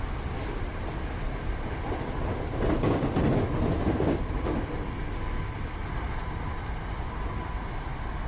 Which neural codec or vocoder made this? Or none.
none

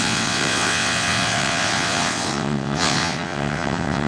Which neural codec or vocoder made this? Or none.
vocoder, WaveNeXt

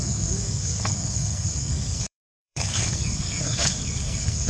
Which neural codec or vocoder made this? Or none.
codec, SNAC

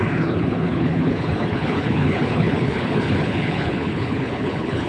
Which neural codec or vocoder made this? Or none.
codec, HILCodec